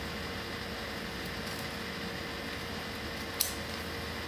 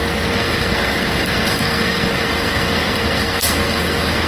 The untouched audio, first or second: first